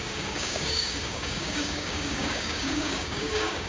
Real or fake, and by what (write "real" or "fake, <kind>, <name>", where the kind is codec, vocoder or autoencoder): fake, codec, DAC